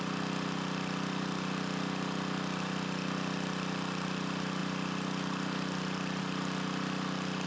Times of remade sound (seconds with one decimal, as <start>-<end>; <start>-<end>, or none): none